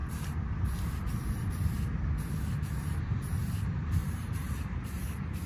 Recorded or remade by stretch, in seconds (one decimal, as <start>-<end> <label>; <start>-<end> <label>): 0.0-4.0 recorded; 4.0-5.0 remade; 5.0-5.5 recorded